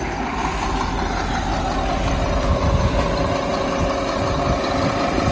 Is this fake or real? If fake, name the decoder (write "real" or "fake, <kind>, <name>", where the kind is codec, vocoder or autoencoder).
real